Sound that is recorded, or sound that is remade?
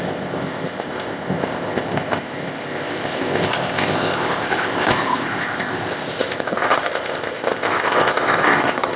remade